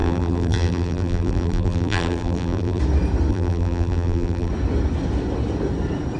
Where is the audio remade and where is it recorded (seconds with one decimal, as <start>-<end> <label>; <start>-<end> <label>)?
0.0-2.8 remade; 2.8-3.3 recorded; 3.3-4.5 remade; 4.5-6.2 recorded